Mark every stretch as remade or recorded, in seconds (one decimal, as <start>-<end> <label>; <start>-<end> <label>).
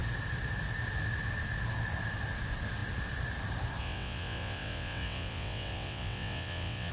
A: 0.0-3.8 recorded; 3.8-6.9 remade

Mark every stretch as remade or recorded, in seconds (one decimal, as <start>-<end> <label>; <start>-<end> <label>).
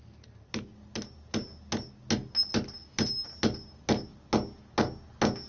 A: 0.0-5.5 recorded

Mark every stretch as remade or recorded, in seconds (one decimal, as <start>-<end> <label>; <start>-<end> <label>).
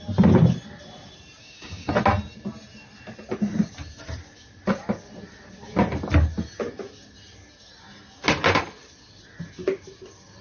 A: 0.0-1.4 recorded; 1.4-1.9 remade; 1.9-10.4 recorded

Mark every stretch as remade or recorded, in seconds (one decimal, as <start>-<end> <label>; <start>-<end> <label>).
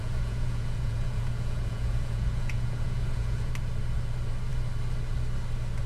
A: 0.0-3.5 remade; 3.5-5.9 recorded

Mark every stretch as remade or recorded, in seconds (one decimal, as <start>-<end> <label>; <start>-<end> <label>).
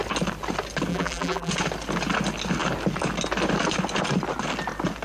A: 0.0-0.9 recorded; 0.9-1.5 remade; 1.5-5.0 recorded